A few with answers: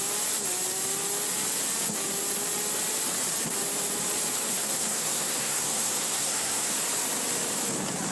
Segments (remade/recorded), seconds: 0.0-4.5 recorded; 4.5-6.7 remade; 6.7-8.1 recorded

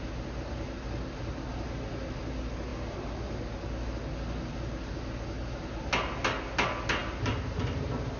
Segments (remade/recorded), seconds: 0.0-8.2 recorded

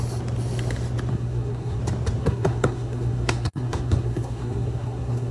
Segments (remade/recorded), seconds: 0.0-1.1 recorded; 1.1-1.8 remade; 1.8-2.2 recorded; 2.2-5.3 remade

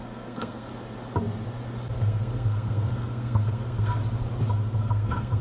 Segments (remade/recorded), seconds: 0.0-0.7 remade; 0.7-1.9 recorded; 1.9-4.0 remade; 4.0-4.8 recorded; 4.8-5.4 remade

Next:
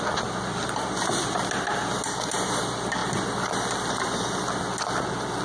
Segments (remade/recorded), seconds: 0.0-5.4 recorded

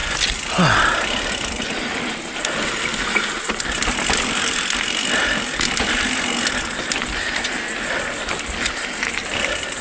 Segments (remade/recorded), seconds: 0.0-9.8 recorded